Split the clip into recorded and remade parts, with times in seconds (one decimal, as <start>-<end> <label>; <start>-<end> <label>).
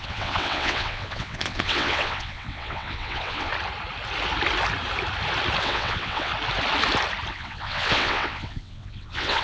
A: 0.0-3.5 remade; 3.5-5.6 recorded; 5.6-6.3 remade; 6.3-7.3 recorded; 7.3-9.4 remade